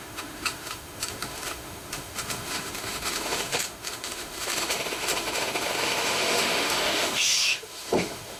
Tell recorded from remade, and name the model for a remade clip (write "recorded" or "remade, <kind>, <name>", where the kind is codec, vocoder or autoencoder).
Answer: remade, autoencoder, DAC-VAE